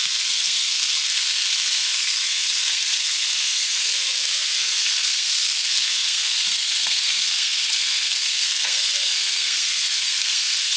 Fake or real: fake